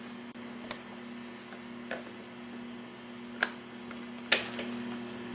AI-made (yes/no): no